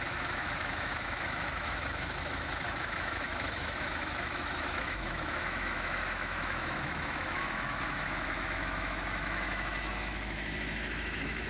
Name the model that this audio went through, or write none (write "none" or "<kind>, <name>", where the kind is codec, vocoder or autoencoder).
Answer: autoencoder, DAC-VAE